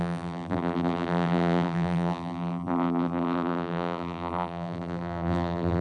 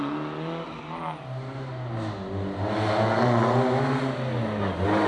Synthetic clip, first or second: first